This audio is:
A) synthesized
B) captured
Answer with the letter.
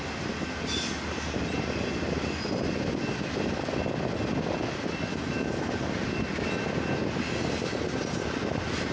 B